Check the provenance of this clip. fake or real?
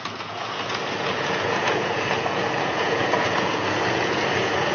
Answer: fake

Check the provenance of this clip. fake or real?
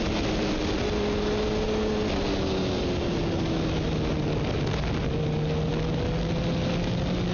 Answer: real